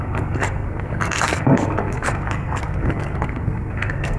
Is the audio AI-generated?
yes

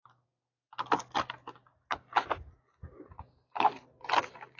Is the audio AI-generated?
no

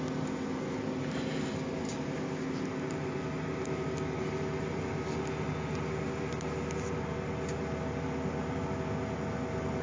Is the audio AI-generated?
no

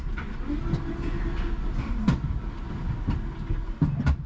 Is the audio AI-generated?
no